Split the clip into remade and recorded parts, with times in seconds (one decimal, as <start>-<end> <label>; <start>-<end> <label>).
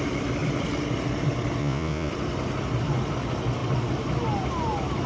0.0-1.6 recorded; 1.6-2.1 remade; 2.1-5.1 recorded